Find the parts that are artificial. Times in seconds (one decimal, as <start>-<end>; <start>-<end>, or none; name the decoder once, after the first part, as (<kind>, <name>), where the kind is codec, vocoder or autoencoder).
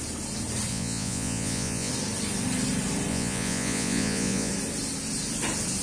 0.7-1.9 (vocoder, Vocos); 3.1-4.5